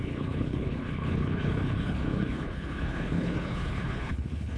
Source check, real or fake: fake